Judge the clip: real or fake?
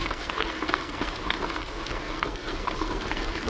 fake